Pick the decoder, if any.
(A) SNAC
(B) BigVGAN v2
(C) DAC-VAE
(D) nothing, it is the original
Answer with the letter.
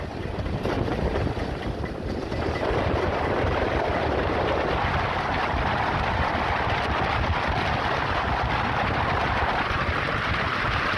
D